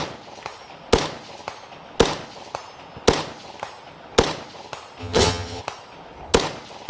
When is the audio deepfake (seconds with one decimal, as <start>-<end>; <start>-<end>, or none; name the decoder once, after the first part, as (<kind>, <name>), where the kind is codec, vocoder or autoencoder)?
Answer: 5.0-5.6 (vocoder, HiFi-GAN)